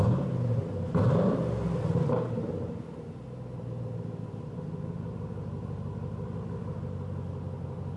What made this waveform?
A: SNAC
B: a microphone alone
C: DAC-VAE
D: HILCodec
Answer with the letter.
B